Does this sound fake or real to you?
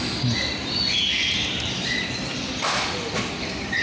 real